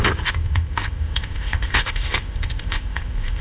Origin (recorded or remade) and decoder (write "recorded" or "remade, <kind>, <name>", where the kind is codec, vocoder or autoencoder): remade, codec, ZipCodec